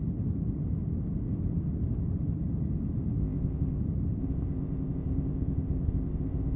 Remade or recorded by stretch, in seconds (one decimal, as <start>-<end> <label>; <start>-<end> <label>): 0.0-3.2 recorded; 3.2-3.8 remade; 3.8-4.2 recorded; 4.2-6.6 remade